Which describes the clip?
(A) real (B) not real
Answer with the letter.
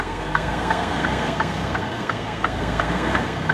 B